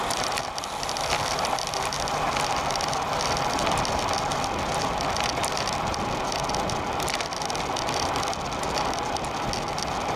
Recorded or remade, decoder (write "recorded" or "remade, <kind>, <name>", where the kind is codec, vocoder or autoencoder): recorded